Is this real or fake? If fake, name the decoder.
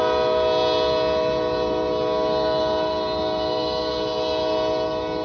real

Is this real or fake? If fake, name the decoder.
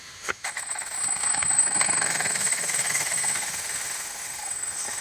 fake, autoencoder, DAC-VAE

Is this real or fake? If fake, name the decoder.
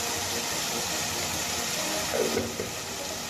real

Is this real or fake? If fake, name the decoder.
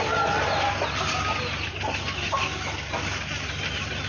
real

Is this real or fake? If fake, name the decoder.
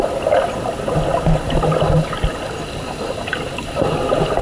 real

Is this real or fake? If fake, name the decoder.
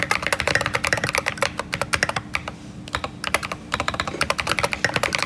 real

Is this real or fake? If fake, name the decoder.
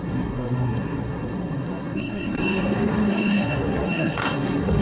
fake, codec, SNAC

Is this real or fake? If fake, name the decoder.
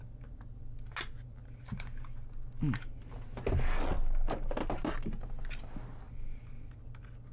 real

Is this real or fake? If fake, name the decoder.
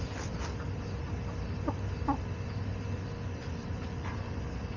real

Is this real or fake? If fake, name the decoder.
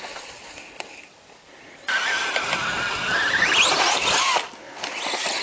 real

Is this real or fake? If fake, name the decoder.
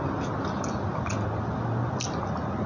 real